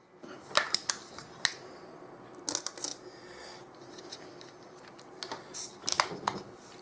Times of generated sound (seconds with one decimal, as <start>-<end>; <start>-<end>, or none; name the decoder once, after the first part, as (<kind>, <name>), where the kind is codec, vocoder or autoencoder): none